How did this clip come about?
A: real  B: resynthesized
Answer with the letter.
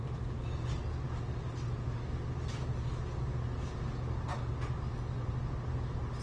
A